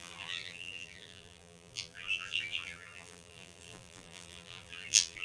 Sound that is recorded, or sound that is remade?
remade